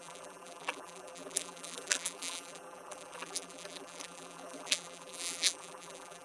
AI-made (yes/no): yes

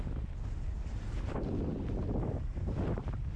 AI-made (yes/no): no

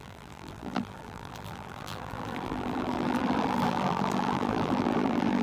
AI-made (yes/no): yes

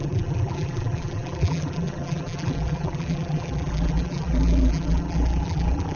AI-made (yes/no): yes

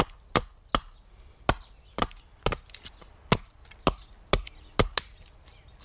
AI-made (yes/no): no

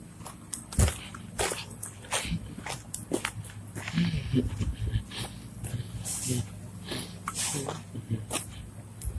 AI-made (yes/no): no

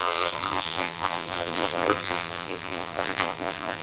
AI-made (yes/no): yes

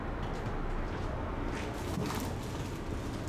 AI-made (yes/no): no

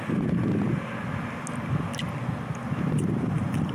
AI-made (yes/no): no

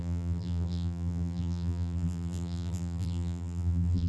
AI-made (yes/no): yes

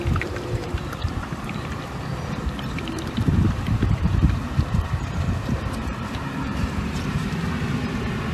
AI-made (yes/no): yes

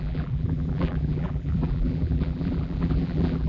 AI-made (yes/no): yes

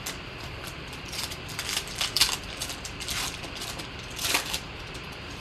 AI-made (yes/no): yes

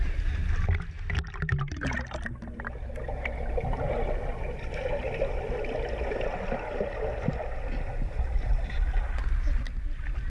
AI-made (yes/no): no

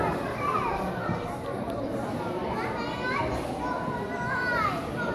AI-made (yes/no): no